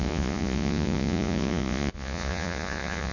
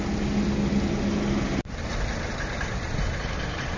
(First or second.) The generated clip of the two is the first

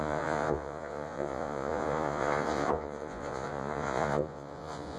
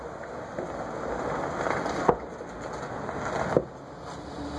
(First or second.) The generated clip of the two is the first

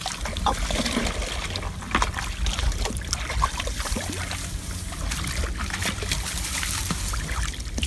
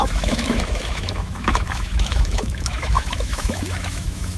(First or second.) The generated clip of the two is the second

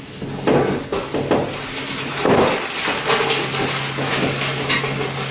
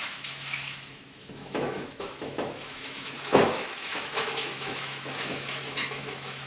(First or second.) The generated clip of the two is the second